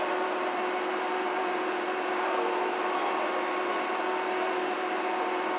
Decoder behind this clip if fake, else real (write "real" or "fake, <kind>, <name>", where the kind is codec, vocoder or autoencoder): fake, vocoder, BigVGAN v2